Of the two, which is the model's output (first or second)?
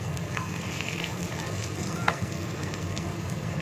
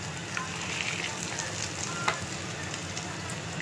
first